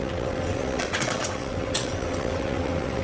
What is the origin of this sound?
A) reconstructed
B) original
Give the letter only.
A